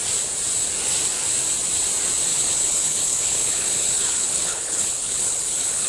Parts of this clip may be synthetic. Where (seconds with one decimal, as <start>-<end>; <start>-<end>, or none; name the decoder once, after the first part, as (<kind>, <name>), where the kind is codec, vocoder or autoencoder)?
2.3-5.9 (codec, HILCodec)